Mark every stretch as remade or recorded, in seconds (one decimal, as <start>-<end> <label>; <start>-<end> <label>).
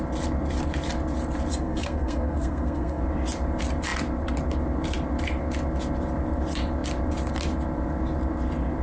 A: 0.0-1.5 recorded; 1.5-3.0 remade; 3.0-8.8 recorded